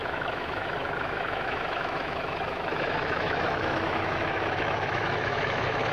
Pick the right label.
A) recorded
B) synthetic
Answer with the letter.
B